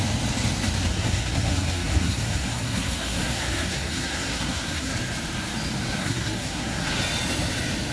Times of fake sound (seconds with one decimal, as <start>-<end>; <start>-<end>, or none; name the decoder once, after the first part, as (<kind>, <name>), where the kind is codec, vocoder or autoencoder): 0.9-4.9 (codec, SNAC); 6.0-7.0